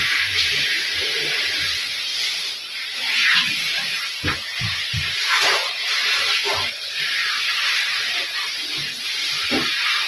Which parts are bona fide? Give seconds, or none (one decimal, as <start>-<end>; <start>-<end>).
9.2-9.7